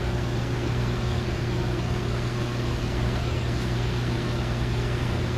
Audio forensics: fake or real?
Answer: fake